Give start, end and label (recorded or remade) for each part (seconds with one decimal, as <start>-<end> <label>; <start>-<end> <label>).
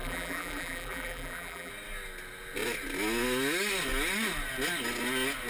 0.0-1.7 remade; 1.7-5.5 recorded